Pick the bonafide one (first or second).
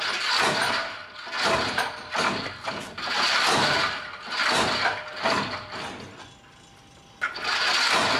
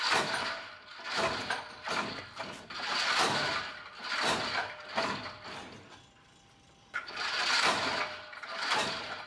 first